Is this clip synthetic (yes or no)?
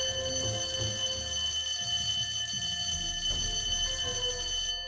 no